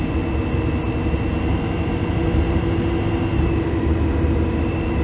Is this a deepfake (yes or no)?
no